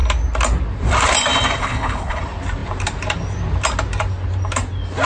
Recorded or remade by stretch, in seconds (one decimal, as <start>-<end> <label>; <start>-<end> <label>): 0.0-1.6 recorded; 1.6-2.2 remade; 2.2-5.1 recorded